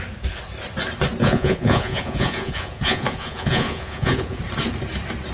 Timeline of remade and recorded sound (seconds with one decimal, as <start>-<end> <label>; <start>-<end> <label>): 0.0-1.2 recorded; 1.2-4.4 remade; 4.4-5.3 recorded